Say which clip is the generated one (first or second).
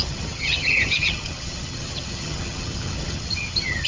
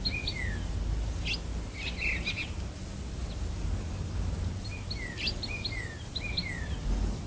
first